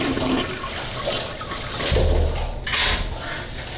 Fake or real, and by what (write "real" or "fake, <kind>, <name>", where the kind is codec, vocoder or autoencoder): real